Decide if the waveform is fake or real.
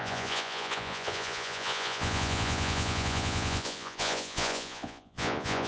fake